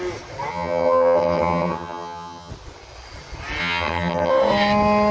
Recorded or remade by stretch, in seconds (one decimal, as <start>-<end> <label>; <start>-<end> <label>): 0.0-0.5 recorded; 0.5-2.5 remade; 2.5-3.6 recorded; 3.6-4.3 remade; 4.3-5.1 recorded